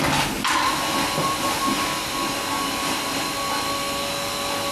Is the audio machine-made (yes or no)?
no